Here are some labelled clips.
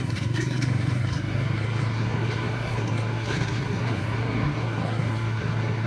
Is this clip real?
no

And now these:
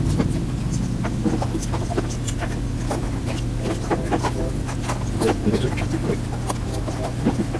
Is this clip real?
yes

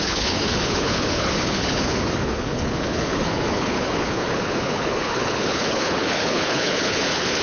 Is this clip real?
no